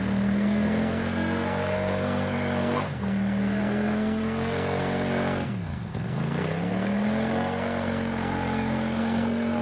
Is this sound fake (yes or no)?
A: yes